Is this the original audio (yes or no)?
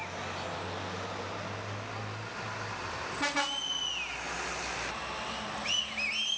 yes